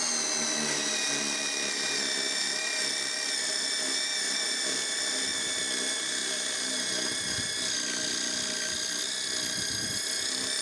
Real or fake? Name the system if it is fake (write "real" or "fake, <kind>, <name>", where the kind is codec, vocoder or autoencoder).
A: real